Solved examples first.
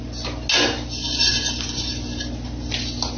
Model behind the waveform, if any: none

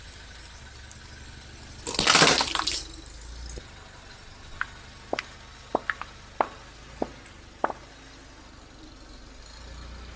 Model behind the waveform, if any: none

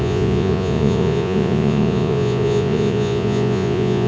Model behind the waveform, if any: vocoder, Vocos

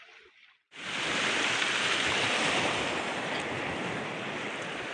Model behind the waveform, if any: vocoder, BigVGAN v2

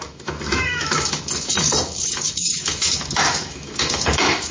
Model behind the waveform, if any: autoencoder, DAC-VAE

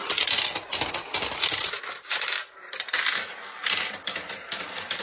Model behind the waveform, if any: none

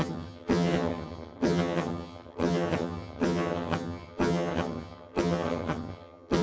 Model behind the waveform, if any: vocoder, HiFi-GAN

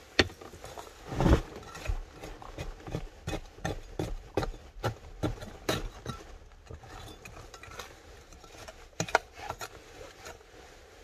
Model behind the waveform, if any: none